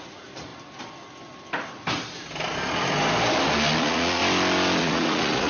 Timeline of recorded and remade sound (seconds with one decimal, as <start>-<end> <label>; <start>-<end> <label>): 0.0-0.5 remade; 0.5-3.8 recorded; 3.8-4.2 remade; 4.2-4.8 recorded; 4.8-5.5 remade

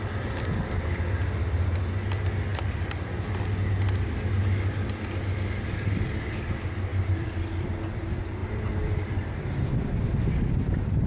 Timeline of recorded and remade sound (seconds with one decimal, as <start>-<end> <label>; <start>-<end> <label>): 0.0-6.9 recorded; 6.9-7.7 remade; 7.7-8.4 recorded; 8.4-11.1 remade

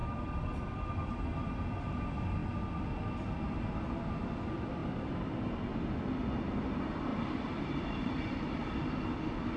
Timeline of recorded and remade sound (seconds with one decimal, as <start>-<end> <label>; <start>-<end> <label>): 0.0-1.0 remade; 1.0-4.8 recorded; 4.8-5.4 remade; 5.4-7.1 recorded; 7.1-8.8 remade; 8.8-9.6 recorded

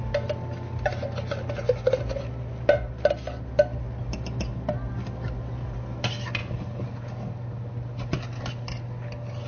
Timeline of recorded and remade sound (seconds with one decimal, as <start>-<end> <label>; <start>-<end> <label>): 0.0-9.5 recorded

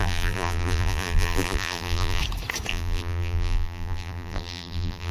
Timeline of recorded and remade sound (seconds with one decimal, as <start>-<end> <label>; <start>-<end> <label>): 0.0-2.2 remade; 2.2-2.7 recorded; 2.7-5.1 remade

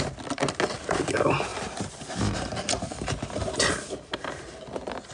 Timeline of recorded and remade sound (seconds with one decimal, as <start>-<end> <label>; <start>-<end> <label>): 0.0-5.1 recorded

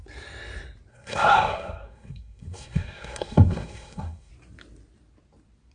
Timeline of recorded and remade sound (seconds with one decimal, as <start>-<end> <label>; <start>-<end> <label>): 0.0-0.9 recorded; 0.9-4.3 remade; 4.3-5.7 recorded

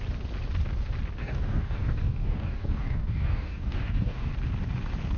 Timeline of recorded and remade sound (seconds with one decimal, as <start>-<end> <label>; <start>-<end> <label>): 0.0-1.2 recorded; 1.2-4.3 remade; 4.3-5.2 recorded